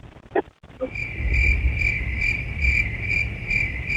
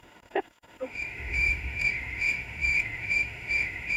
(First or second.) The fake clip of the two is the second